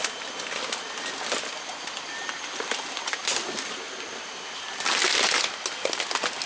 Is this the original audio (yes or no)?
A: yes